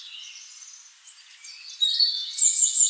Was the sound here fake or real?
real